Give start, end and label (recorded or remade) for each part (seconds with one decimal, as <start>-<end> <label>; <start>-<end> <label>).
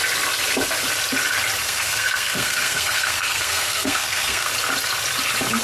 0.0-1.6 recorded; 1.6-4.5 remade; 4.5-5.6 recorded